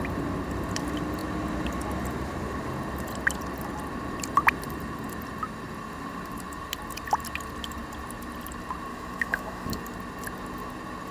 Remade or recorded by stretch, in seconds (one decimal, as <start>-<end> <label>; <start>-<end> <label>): 0.0-8.9 recorded; 8.9-9.8 remade; 9.8-11.1 recorded